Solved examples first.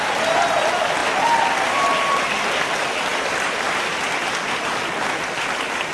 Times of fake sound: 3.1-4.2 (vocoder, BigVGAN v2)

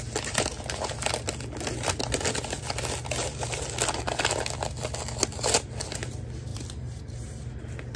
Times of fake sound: 6.5-7.5 (vocoder, BigVGAN v2)